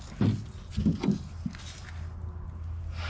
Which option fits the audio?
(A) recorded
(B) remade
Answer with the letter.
A